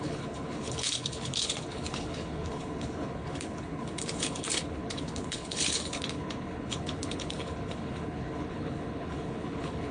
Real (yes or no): no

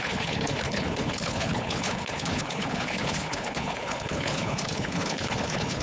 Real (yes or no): no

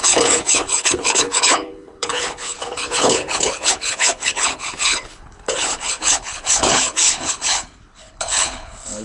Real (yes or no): no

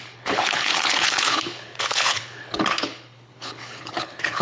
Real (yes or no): no